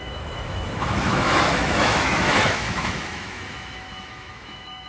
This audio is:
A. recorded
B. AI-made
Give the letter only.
B